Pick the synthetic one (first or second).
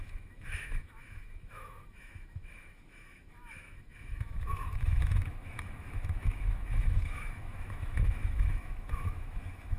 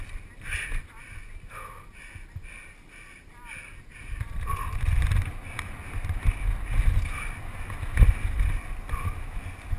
first